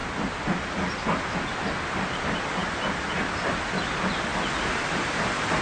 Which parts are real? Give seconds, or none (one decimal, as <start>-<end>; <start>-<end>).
0.0-5.6